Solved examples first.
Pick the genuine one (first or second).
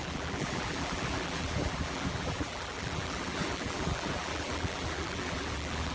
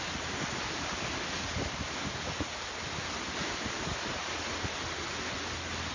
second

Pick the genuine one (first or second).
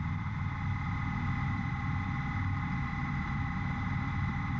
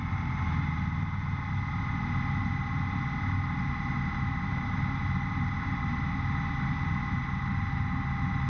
second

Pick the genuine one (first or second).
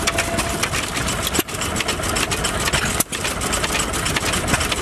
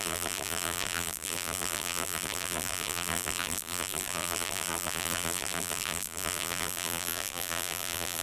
first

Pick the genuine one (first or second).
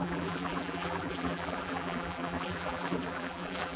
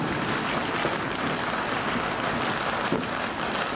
second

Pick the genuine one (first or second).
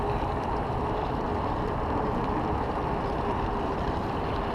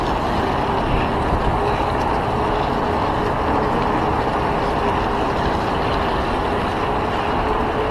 second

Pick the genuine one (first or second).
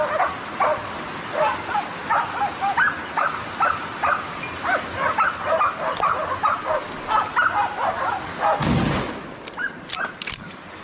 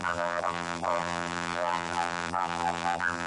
first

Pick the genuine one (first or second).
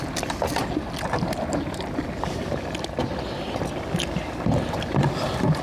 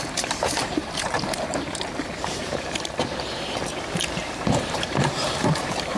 first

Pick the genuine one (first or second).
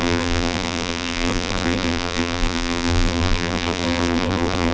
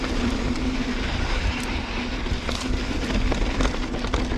second